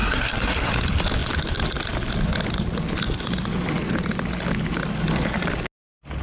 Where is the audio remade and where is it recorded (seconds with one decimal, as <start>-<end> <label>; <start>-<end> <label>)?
0.0-0.7 remade; 0.7-6.2 recorded